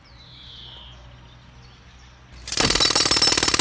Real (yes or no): yes